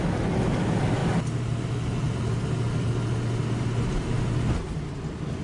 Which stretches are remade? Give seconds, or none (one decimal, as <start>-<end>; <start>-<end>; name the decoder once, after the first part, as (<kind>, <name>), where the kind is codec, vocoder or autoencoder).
none